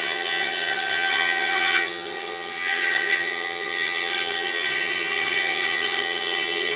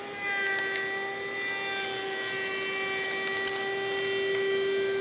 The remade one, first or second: first